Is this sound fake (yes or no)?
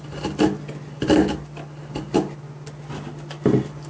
no